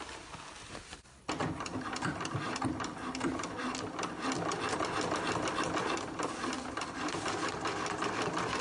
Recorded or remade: recorded